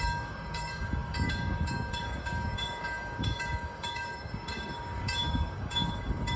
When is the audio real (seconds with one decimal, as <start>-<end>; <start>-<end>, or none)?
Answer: none